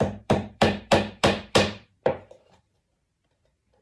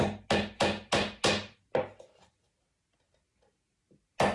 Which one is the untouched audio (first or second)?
second